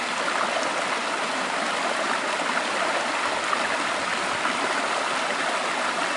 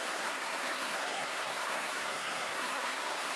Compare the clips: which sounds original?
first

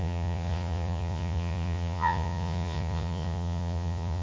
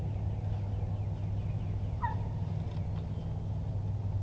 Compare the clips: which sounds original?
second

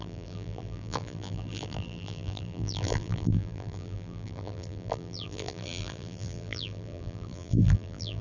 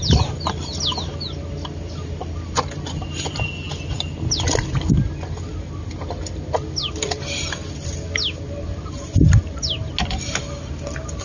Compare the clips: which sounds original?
second